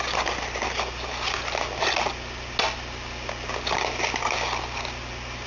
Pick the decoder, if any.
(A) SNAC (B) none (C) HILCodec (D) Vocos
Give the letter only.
B